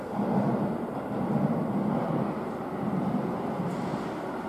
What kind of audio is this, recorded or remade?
recorded